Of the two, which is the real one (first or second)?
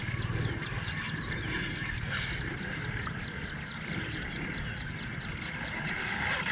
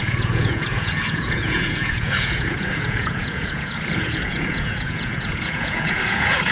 first